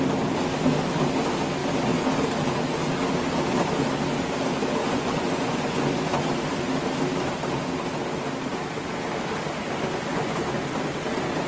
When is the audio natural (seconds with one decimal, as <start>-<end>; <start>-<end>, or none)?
0.0-4.8; 6.2-10.1; 10.6-11.5